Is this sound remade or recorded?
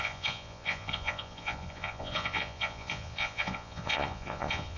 remade